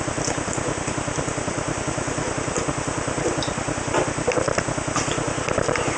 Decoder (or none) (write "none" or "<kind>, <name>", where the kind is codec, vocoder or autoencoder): none